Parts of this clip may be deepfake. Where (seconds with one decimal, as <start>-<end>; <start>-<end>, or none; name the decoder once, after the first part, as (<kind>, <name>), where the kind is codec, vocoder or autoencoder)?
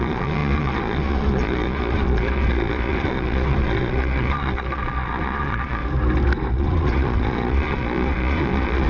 0.0-5.8 (vocoder, Vocos); 6.5-8.9